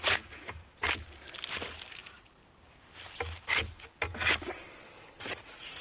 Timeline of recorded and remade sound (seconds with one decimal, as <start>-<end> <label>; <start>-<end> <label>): 0.0-0.7 remade; 0.7-2.0 recorded; 2.0-2.4 remade; 2.4-5.2 recorded; 5.2-5.8 remade